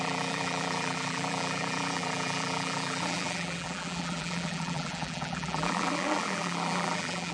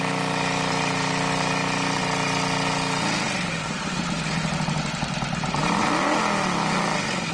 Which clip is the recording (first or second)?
second